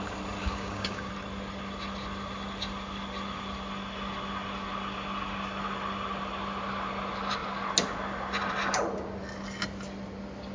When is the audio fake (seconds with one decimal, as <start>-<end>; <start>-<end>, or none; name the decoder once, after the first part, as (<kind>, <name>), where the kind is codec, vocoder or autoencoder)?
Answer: 0.4-1.1 (codec, DAC)